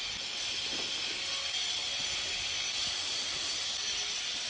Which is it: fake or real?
real